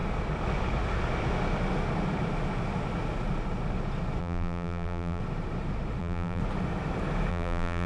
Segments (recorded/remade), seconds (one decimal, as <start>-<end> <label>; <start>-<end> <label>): 0.0-4.2 recorded; 4.2-5.2 remade; 5.2-6.0 recorded; 6.0-6.4 remade; 6.4-7.3 recorded; 7.3-7.9 remade